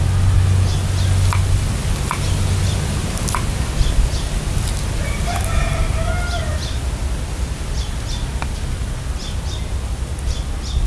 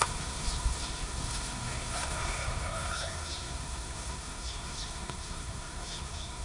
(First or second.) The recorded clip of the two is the first